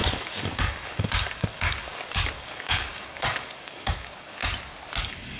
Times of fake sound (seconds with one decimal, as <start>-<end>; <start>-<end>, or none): 0.0-4.4; 5.0-5.4